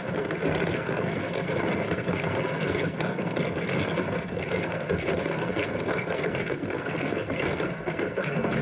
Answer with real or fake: fake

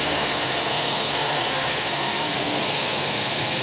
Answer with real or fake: fake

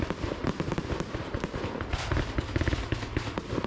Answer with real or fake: real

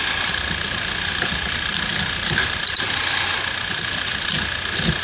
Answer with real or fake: real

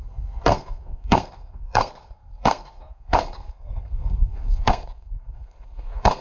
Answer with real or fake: fake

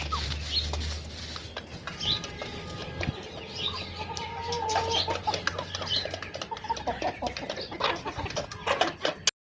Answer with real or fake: real